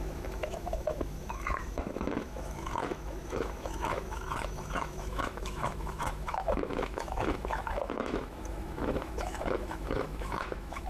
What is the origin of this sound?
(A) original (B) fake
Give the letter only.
B